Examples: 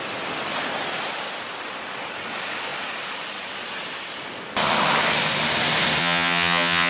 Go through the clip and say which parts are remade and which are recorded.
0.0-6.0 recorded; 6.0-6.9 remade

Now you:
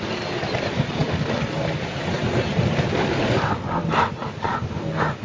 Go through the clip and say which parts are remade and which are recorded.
0.0-5.2 recorded

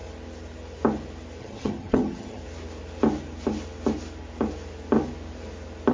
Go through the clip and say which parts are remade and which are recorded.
0.0-1.4 recorded; 1.4-2.4 remade; 2.4-5.9 recorded

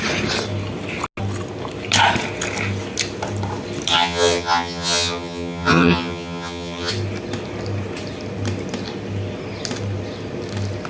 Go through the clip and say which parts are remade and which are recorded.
0.0-3.9 recorded; 3.9-6.9 remade; 6.9-10.9 recorded

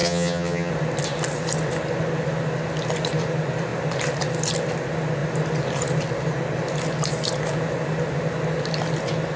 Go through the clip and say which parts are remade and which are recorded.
0.0-0.7 remade; 0.7-9.4 recorded

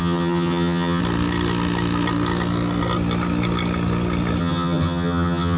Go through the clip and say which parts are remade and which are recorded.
0.0-1.0 remade; 1.0-4.4 recorded; 4.4-5.6 remade

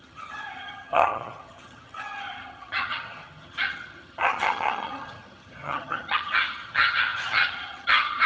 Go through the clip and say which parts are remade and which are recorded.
0.0-8.3 remade